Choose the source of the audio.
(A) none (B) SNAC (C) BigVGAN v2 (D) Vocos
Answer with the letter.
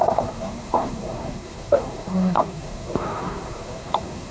B